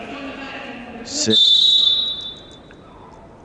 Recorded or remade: recorded